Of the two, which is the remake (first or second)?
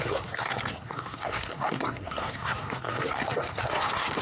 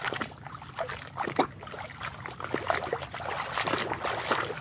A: first